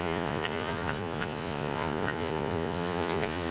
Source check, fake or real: fake